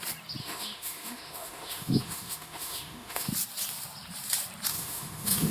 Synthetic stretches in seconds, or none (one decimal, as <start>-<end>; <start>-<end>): 0.4-3.3; 4.7-5.5